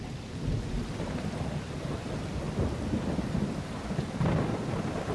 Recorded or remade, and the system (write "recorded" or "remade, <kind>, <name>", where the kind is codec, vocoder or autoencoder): recorded